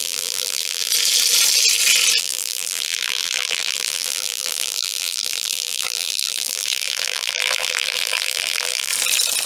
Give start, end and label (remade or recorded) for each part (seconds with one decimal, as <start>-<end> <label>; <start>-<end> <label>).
0.0-0.9 remade; 0.9-2.2 recorded; 2.2-8.9 remade; 8.9-9.5 recorded